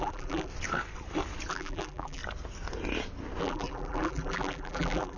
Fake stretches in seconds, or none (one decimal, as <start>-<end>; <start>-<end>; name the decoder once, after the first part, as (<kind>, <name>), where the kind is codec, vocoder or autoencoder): 0.0-0.5 (vocoder, BigVGAN v2); 1.5-2.2; 3.4-5.2